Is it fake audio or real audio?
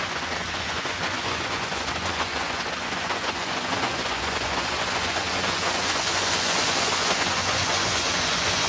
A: fake